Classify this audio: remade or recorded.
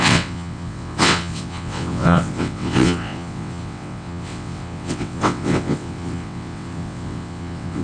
remade